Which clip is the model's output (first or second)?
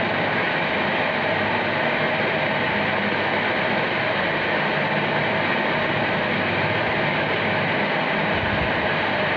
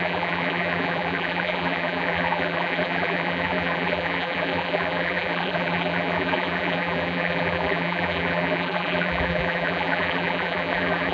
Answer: second